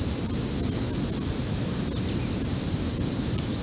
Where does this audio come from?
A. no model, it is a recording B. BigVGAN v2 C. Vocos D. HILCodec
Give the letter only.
A